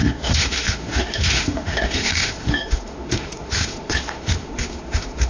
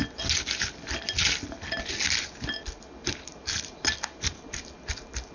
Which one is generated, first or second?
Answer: first